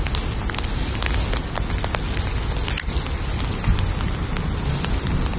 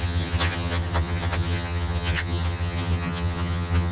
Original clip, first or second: first